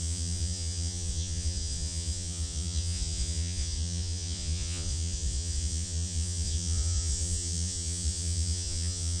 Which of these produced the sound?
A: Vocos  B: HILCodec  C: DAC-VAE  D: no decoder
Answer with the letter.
A